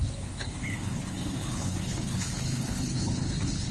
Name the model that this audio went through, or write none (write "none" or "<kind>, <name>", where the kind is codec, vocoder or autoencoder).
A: codec, HILCodec